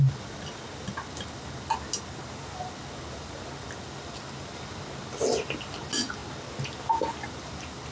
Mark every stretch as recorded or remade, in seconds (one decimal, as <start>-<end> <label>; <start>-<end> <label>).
0.0-7.9 recorded